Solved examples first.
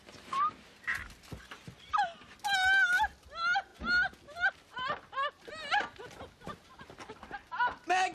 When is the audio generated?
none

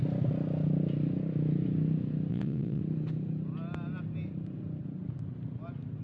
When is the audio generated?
2.3-2.8

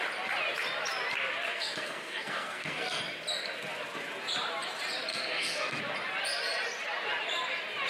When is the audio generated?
1.5-3.0; 5.1-5.8

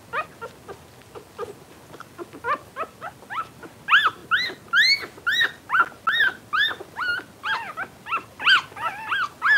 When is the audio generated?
none